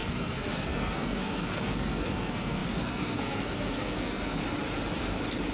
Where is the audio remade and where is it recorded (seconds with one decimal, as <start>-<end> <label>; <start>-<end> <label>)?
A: 0.0-4.4 remade; 4.4-5.5 recorded